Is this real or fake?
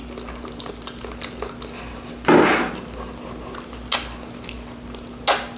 real